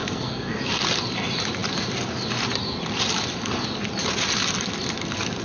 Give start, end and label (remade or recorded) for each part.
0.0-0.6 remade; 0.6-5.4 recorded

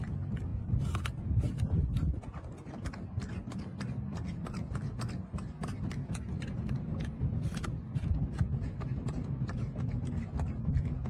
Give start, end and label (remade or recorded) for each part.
0.0-11.1 recorded